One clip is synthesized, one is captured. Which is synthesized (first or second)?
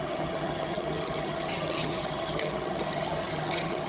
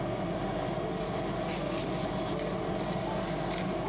first